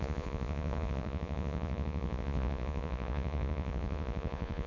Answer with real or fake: fake